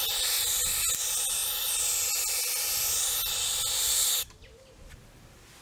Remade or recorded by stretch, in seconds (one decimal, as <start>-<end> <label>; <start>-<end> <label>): 0.0-5.6 recorded